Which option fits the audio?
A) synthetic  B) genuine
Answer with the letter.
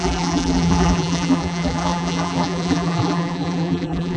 A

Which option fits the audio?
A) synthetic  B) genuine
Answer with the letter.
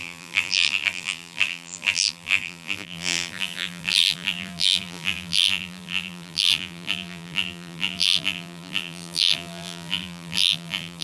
A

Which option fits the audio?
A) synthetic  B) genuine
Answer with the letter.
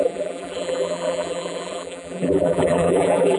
A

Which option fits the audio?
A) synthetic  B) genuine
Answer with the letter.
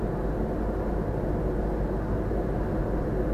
B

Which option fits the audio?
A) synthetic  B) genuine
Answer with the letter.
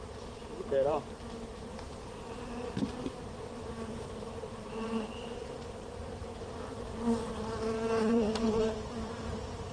A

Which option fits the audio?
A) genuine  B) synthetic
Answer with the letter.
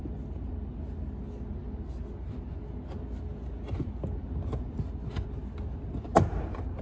A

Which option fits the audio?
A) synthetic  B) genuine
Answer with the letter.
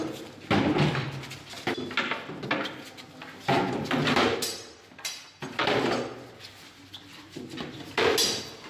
B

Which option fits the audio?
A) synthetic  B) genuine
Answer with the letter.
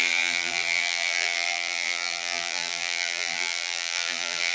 A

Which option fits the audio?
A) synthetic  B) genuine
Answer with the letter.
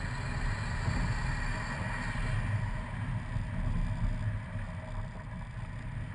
B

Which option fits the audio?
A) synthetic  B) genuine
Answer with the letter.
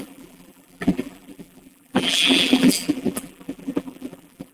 A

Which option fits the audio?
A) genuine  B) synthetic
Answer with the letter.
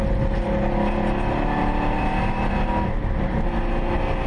A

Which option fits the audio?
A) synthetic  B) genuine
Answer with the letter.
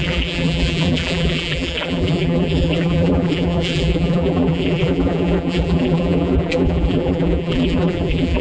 A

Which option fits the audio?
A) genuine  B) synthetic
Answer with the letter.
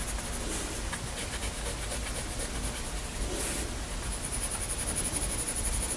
A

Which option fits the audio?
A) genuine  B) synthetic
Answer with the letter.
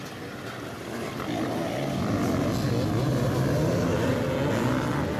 A